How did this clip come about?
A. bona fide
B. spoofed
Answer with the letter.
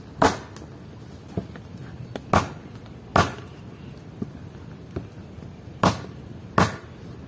A